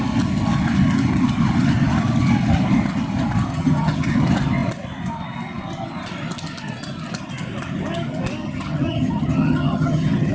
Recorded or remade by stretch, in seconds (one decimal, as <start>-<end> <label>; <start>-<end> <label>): 0.0-3.5 recorded; 3.5-4.1 remade; 4.1-8.4 recorded; 8.4-10.3 remade